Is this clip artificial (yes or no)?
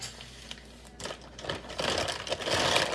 no